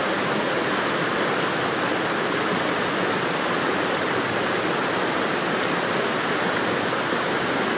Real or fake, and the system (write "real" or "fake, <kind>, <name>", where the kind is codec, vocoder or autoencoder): real